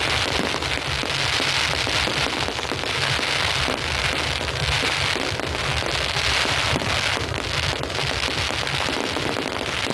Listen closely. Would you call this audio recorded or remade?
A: recorded